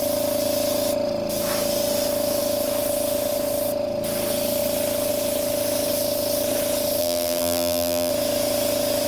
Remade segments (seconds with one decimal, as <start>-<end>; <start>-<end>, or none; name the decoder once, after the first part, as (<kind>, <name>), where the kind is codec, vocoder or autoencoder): 7.0-8.1 (vocoder, BigVGAN v2)